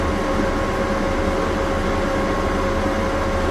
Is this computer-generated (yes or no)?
no